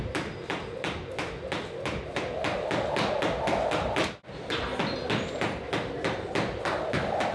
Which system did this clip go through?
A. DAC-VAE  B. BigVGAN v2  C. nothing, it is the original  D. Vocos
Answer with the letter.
C